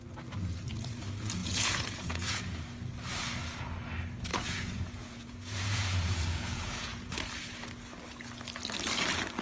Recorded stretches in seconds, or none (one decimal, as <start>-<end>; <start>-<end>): 0.0-1.4; 2.4-4.3; 7.1-9.4